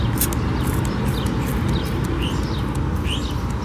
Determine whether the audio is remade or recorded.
recorded